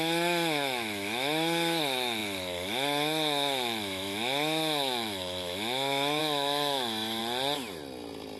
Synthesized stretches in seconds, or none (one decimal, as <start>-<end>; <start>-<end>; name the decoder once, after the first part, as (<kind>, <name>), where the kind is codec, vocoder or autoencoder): 0.0-7.2 (autoencoder, DAC-VAE)